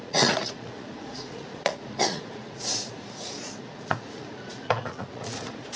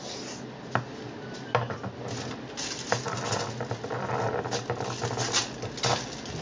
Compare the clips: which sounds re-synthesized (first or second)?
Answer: first